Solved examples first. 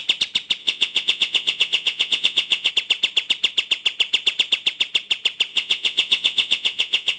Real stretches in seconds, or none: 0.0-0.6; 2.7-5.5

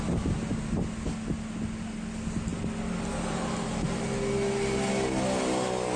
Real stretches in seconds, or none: 0.0-6.0

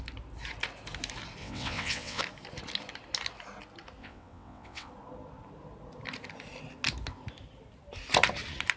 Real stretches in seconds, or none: 0.0-1.4; 2.2-4.0; 4.9-8.8

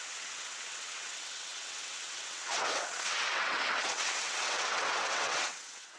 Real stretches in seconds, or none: none

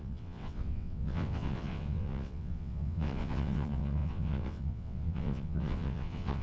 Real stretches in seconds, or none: none

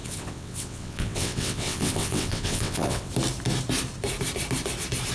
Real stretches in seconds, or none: 3.1-5.1